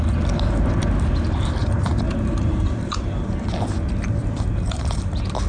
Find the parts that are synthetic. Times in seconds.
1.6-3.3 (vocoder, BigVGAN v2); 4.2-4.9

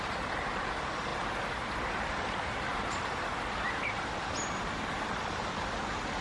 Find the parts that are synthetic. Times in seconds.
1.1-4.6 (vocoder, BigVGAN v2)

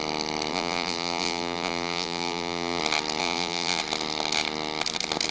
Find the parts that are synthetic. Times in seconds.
0.5-2.8 (vocoder, BigVGAN v2); 3.2-3.8

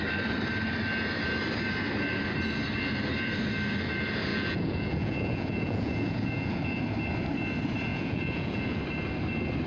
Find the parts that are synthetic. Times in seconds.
4.3-6.8 (vocoder, Vocos); 7.9-8.8